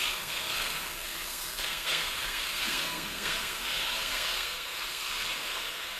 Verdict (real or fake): fake